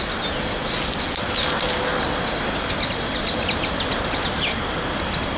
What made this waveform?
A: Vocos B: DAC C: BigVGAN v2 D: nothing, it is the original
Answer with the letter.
D